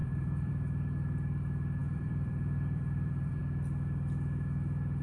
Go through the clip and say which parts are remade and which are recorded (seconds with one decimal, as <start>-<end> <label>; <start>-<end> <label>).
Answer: 0.0-0.5 remade; 0.5-1.8 recorded; 1.8-3.4 remade; 3.4-5.0 recorded